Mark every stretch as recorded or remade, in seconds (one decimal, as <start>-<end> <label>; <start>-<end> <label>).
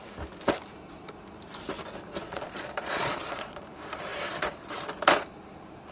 0.0-2.2 recorded; 2.2-3.6 remade; 3.6-5.9 recorded